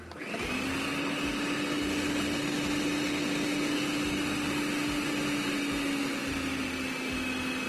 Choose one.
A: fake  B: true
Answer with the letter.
B